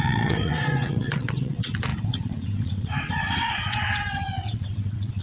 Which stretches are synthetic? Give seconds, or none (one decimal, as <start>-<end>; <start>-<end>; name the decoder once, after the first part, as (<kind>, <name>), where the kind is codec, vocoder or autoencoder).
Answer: 0.0-5.2 (vocoder, WaveNeXt)